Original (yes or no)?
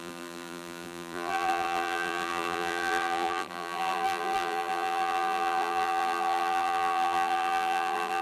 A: no